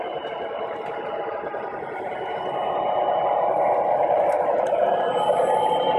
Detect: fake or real fake